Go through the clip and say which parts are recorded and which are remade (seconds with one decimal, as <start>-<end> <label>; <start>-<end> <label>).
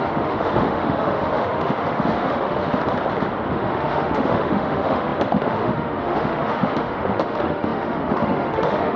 0.0-2.8 remade; 2.8-3.5 recorded; 3.5-9.0 remade